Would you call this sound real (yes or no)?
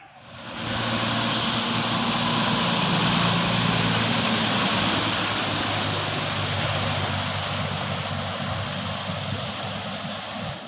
yes